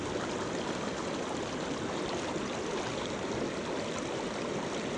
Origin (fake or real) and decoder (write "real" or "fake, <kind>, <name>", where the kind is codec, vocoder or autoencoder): real